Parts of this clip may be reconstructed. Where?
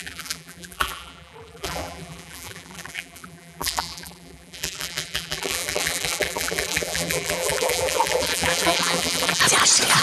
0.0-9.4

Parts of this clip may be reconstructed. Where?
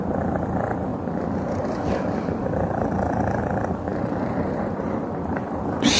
0.9-3.4; 3.9-5.6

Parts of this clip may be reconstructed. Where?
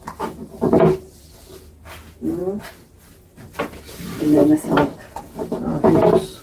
0.4-1.2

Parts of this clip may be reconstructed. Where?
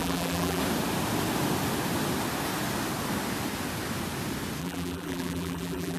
0.0-0.6; 4.6-6.0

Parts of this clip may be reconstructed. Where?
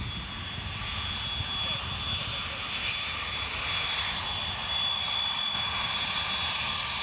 none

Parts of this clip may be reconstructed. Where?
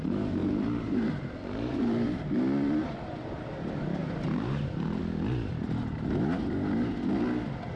0.4-2.4; 2.8-3.5; 4.0-5.0